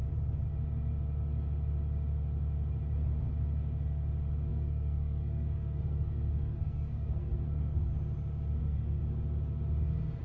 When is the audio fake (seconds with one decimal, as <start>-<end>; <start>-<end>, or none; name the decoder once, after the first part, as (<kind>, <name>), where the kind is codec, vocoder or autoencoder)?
4.5-7.9 (codec, SNAC); 8.6-9.0